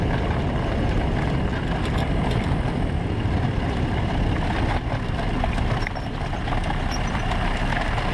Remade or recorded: recorded